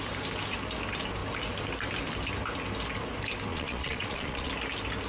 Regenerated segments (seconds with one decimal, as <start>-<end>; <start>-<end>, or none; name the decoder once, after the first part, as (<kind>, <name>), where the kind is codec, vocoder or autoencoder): 3.5-4.5 (vocoder, Vocos)